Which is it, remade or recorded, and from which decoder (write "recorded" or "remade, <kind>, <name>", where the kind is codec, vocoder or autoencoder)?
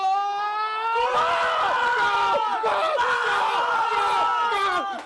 recorded